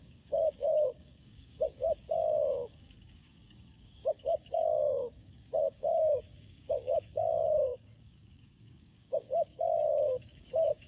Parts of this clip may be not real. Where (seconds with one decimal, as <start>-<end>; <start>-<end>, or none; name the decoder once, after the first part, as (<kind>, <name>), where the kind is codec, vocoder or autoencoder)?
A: 0.0-10.9 (codec, DAC)